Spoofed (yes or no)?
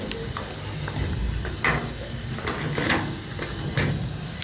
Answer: no